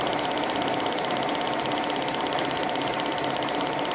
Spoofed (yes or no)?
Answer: no